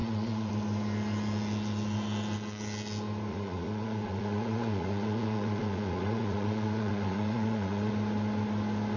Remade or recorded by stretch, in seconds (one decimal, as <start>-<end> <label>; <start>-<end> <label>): 0.0-0.5 remade; 0.5-3.3 recorded; 3.3-7.9 remade; 7.9-9.0 recorded